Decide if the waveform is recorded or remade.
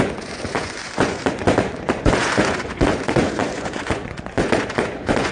remade